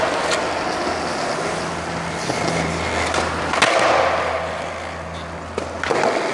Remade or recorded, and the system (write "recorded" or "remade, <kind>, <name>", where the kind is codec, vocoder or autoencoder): recorded